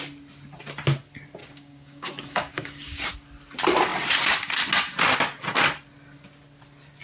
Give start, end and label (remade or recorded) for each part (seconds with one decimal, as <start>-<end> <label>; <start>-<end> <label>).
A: 0.0-1.4 recorded; 1.4-3.0 remade; 3.0-7.0 recorded